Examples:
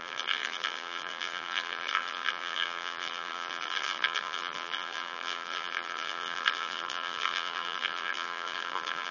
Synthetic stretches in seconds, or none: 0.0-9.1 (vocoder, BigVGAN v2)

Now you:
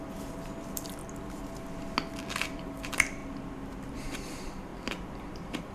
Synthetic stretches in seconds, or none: 0.0-1.0 (vocoder, BigVGAN v2); 2.2-3.2; 3.9-4.7; 5.2-5.7

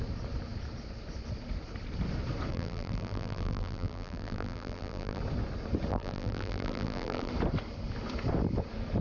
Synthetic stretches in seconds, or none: 2.5-5.2 (vocoder, BigVGAN v2); 5.9-7.3

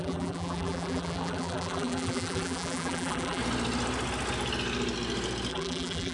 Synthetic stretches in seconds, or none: 0.0-3.4 (vocoder, BigVGAN v2); 5.5-6.1

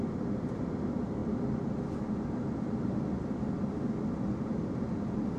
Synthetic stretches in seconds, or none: none